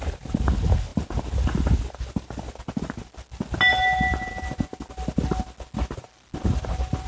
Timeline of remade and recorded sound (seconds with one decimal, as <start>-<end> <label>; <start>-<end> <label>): 0.0-7.1 recorded